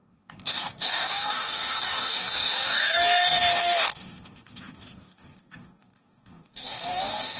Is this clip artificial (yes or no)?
yes